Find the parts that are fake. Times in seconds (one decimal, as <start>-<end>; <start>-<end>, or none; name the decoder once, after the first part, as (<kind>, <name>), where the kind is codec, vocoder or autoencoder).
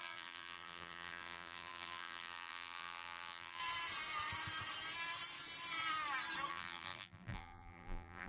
0.0-3.6 (vocoder, BigVGAN v2); 6.5-8.3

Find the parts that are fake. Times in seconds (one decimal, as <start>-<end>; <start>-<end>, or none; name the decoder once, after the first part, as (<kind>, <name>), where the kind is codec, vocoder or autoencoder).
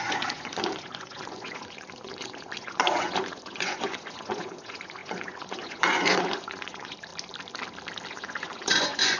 0.0-7.1 (vocoder, Vocos); 8.1-9.2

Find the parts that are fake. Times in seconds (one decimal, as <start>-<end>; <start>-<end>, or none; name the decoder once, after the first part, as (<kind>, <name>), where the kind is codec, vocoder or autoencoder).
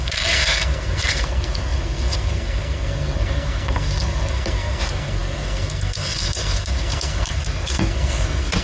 0.0-8.6 (codec, SNAC)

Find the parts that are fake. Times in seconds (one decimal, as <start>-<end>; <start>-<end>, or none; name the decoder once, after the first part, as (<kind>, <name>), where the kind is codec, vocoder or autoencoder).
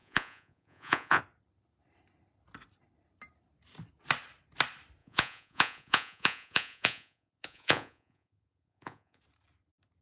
0.0-1.2 (vocoder, Vocos); 5.0-9.2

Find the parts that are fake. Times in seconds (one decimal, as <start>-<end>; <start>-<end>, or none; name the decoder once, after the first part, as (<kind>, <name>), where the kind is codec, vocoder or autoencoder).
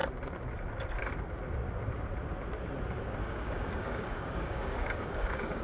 3.2-5.6 (codec, DAC)